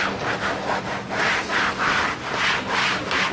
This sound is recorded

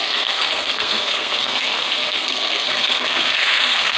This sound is remade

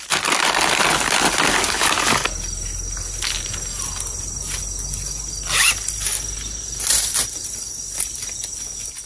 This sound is recorded